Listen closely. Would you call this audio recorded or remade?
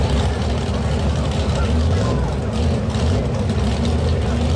recorded